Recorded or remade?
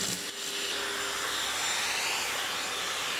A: recorded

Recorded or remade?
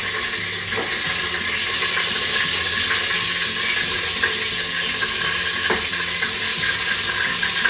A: recorded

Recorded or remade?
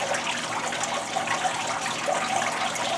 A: recorded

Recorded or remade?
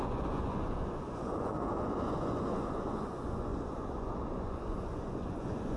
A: remade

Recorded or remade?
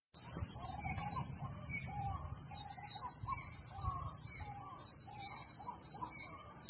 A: remade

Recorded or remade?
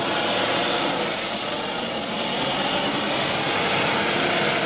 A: recorded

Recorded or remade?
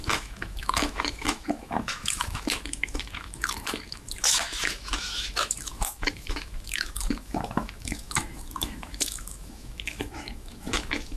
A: remade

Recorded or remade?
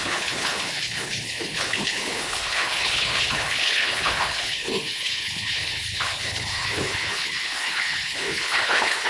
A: remade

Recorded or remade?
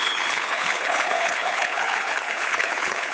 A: remade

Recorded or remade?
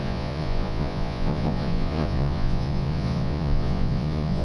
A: remade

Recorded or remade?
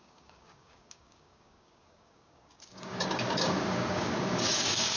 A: remade